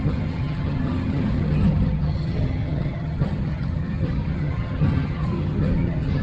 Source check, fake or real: fake